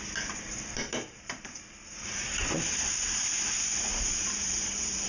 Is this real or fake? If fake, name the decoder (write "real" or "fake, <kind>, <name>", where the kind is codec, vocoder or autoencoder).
fake, vocoder, BigVGAN v2